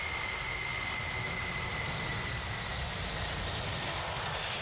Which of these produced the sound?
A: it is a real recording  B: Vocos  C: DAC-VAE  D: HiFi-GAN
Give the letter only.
A